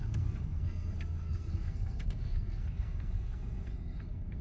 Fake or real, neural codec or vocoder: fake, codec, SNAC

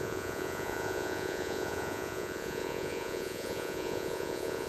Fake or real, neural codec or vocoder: fake, vocoder, Vocos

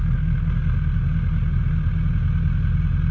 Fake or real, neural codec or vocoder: real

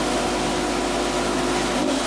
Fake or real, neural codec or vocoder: real